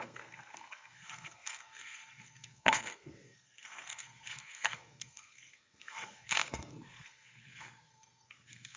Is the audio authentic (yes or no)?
no